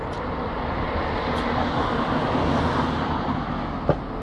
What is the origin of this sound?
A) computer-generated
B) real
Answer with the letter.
B